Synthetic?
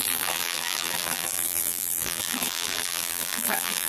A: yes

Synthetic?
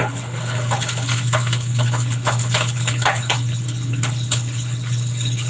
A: yes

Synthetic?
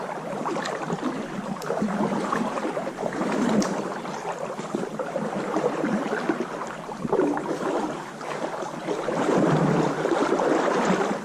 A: no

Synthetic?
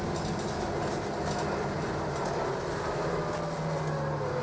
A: no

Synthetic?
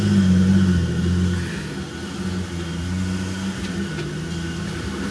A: no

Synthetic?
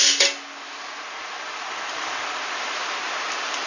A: no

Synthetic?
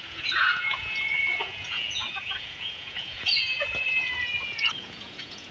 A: yes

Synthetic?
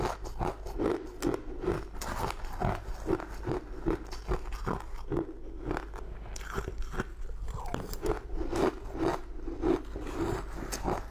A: no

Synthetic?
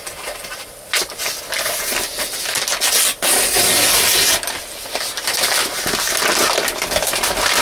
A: no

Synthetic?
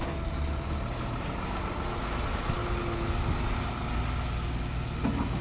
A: no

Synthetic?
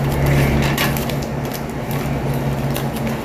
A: no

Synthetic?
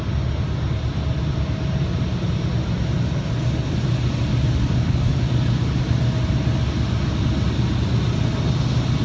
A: no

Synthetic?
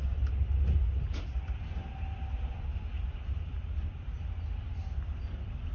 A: no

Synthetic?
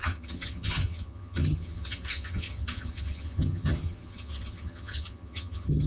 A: yes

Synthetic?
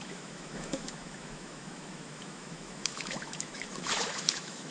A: yes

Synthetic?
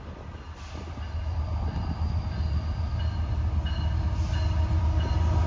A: no